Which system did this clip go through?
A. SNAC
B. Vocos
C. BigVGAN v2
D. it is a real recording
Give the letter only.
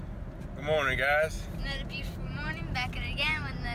D